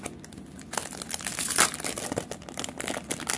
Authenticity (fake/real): real